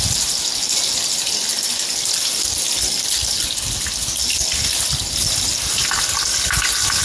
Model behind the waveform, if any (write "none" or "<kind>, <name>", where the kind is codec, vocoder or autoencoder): none